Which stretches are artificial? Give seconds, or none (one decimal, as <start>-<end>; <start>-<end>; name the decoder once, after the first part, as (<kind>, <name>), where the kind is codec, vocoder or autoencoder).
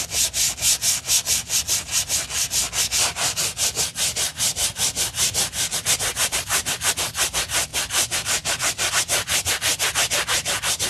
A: 4.3-6.7 (vocoder, BigVGAN v2); 7.7-8.9